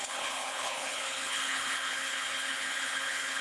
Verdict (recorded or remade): remade